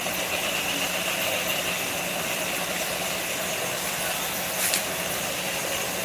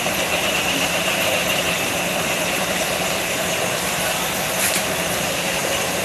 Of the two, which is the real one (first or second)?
first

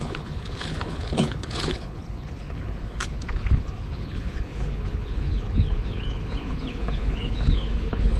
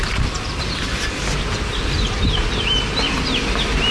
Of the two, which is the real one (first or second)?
second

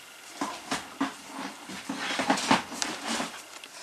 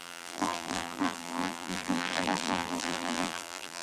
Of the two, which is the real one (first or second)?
first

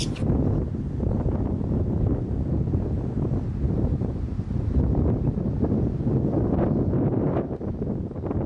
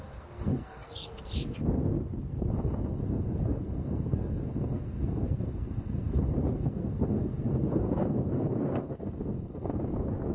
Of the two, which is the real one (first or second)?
first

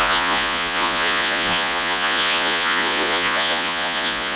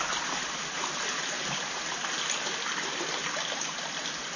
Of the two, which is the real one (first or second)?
second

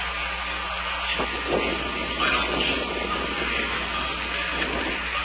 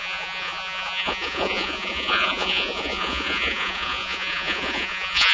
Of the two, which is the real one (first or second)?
first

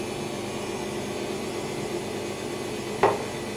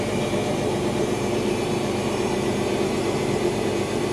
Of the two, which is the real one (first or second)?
first